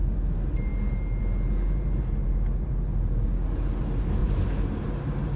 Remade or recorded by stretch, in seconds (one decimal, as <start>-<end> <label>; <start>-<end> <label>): 0.0-0.7 remade; 0.7-1.2 recorded; 1.2-2.9 remade; 2.9-3.8 recorded; 3.8-4.2 remade; 4.2-5.4 recorded